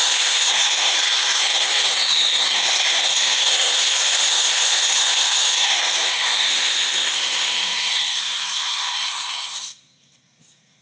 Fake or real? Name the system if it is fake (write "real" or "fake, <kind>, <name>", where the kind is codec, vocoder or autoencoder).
fake, codec, SNAC